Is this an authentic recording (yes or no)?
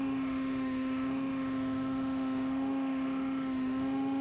no